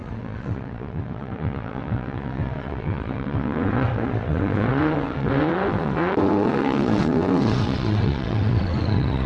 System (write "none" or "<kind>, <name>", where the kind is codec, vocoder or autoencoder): vocoder, WaveNeXt